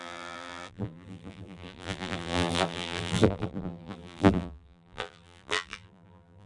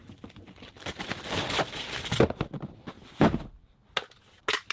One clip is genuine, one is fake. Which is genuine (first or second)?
second